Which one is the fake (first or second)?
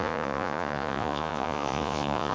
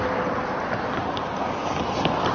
first